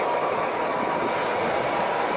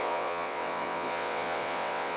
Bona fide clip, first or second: first